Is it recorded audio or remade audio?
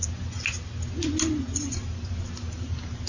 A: recorded